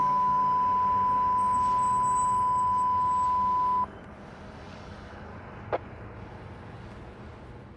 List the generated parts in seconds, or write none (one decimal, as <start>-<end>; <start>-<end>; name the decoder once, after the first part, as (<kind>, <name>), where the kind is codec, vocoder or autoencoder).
0.0-0.4 (codec, DAC); 4.8-5.3